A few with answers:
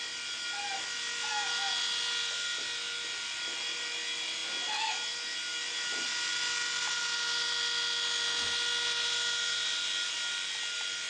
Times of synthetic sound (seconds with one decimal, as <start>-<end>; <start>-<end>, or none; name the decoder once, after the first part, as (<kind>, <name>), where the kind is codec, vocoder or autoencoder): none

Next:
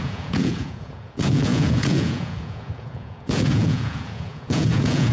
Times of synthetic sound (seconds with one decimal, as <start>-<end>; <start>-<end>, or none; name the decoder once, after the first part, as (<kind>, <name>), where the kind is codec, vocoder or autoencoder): 0.0-5.1 (vocoder, Vocos)

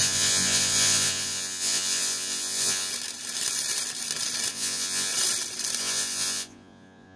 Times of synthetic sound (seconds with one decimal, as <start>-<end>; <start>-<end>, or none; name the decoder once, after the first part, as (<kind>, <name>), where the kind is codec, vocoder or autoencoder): 0.0-2.9 (vocoder, Vocos); 4.5-5.1; 5.8-7.2

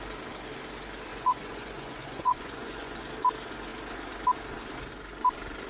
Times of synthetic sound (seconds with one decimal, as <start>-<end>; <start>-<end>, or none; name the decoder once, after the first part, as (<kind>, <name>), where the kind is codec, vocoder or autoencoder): 1.1-3.0 (vocoder, Vocos)